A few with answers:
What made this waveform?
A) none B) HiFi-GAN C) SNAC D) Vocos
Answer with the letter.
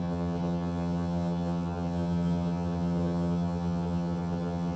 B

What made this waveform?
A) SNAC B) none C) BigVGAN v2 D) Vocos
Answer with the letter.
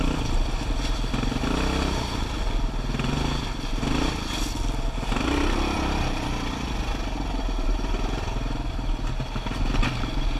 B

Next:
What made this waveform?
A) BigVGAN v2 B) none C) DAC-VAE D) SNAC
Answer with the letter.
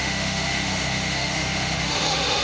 C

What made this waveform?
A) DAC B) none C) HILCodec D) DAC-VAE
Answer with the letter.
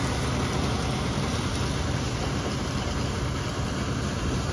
B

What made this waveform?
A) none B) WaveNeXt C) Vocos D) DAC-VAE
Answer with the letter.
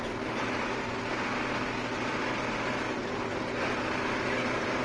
A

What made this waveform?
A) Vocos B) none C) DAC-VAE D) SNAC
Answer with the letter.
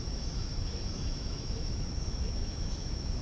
C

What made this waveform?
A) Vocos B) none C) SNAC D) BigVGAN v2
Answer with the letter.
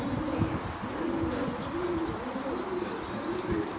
B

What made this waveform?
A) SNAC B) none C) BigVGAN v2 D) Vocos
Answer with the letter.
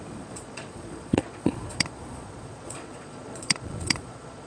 D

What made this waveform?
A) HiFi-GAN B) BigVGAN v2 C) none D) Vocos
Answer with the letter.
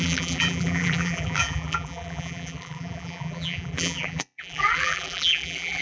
B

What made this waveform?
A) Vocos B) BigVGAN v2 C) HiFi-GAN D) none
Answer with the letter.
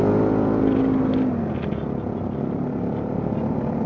D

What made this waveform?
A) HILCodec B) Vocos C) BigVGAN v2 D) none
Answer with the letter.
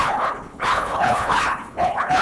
A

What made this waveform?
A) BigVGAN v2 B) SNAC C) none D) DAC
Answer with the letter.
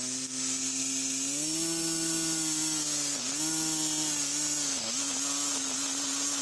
C